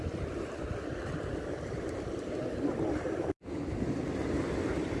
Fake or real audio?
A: real